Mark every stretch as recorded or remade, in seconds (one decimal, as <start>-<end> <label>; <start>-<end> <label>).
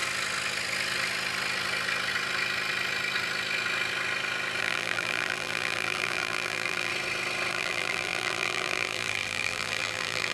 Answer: 0.0-4.6 recorded; 4.6-6.9 remade; 6.9-7.5 recorded; 7.5-10.3 remade